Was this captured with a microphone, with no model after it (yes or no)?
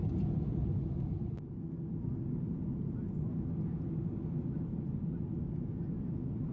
yes